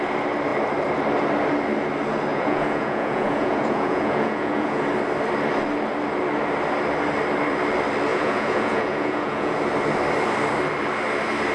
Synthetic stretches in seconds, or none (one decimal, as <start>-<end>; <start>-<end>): 2.3-4.8; 8.1-9.6